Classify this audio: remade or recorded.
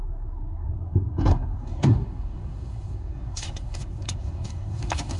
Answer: remade